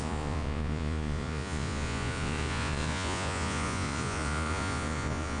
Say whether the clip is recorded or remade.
remade